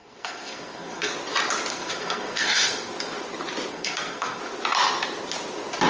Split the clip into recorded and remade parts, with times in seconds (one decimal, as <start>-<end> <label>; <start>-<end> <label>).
0.0-1.1 remade; 1.1-1.7 recorded; 1.7-2.9 remade; 2.9-3.7 recorded; 3.7-4.4 remade; 4.4-5.9 recorded